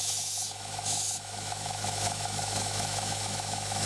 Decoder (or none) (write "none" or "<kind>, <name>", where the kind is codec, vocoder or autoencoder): autoencoder, DAC-VAE